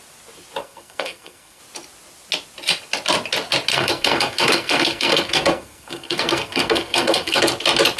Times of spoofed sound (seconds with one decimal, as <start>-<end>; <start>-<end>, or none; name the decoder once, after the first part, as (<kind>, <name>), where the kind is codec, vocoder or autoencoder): 0.6-1.6 (codec, SNAC); 3.7-7.4